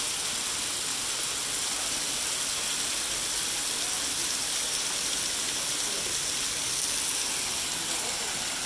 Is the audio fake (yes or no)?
no